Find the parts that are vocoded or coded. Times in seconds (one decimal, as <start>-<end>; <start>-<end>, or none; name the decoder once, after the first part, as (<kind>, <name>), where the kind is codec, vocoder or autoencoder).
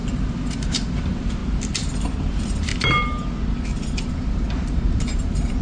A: 0.0-1.4 (vocoder, BigVGAN v2); 2.3-2.7; 4.1-5.6